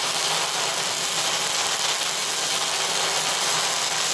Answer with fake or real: real